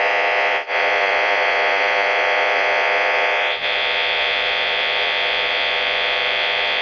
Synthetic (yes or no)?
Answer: yes